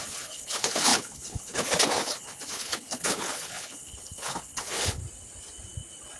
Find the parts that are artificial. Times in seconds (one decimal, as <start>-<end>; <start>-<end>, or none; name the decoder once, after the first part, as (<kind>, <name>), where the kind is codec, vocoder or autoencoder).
0.0-5.0 (codec, HILCodec)